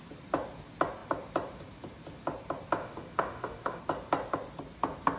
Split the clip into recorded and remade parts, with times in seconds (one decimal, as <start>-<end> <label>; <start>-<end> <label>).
0.0-2.8 recorded; 2.8-3.8 remade; 3.8-5.2 recorded